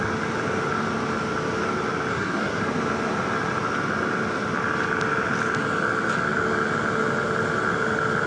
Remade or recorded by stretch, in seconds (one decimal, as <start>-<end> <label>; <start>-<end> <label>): 0.0-2.1 recorded; 2.1-2.6 remade; 2.6-8.3 recorded